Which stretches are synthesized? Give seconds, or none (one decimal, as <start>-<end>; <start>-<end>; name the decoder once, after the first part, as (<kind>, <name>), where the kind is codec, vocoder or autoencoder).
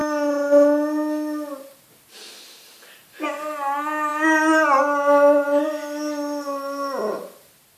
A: none